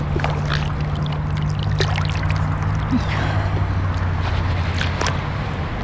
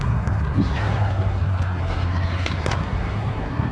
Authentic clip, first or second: first